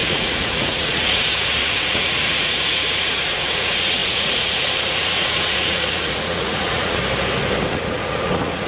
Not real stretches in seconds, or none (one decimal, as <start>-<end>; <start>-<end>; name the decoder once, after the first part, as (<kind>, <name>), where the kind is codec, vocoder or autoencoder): 0.0-7.0 (vocoder, Vocos); 7.7-8.7